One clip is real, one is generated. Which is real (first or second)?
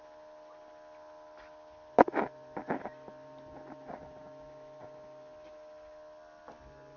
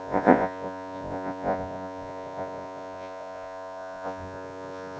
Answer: first